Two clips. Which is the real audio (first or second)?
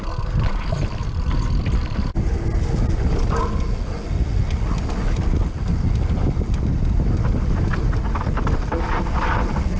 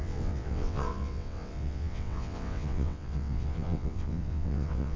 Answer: first